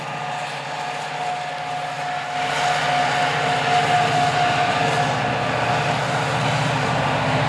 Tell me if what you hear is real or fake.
real